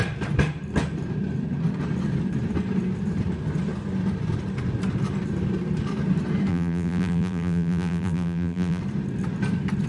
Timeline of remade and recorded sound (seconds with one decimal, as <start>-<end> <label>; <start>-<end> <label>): 0.0-6.5 recorded; 6.5-8.8 remade; 8.8-9.9 recorded